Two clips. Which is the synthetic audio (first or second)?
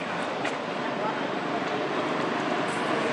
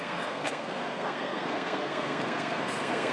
second